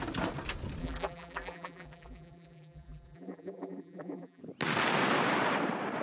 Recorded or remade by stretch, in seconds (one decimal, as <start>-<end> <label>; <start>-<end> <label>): 0.0-0.8 recorded; 0.8-4.4 remade; 4.4-6.0 recorded